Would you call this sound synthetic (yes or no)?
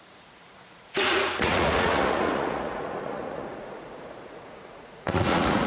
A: yes